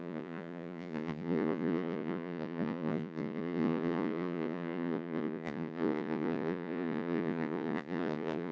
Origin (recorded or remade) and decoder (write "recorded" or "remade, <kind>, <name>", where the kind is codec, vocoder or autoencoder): remade, vocoder, Vocos